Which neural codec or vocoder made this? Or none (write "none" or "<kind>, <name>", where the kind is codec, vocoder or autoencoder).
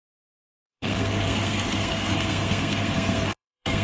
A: codec, SNAC